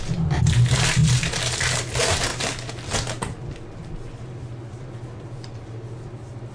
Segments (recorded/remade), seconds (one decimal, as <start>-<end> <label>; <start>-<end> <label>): 0.0-2.3 recorded; 2.3-6.5 remade